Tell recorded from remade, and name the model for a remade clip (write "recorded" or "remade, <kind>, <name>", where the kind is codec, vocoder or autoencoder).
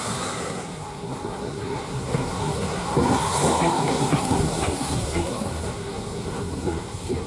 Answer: remade, codec, SNAC